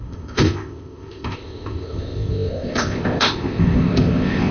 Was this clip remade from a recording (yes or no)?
yes